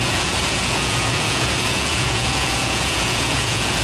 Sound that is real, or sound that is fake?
fake